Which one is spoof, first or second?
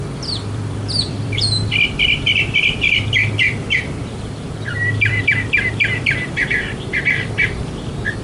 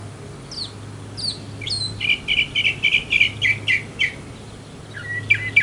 first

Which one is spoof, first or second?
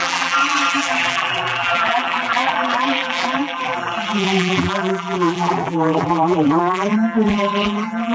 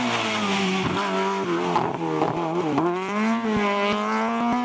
first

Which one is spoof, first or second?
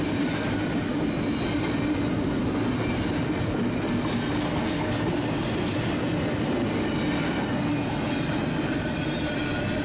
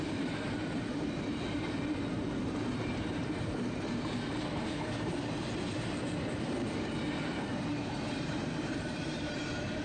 second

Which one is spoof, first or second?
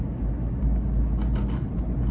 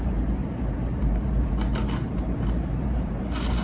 second